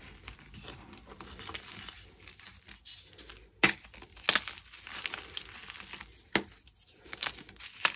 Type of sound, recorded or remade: recorded